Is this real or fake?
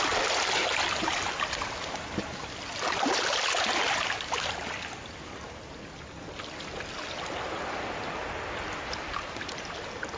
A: real